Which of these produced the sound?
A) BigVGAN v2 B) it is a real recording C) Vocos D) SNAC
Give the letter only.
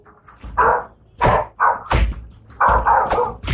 B